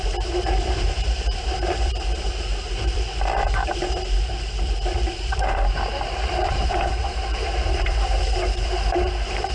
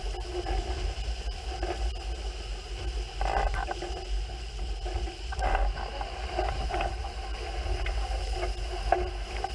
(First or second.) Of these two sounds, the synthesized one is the first